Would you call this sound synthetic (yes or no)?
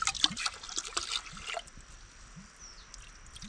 no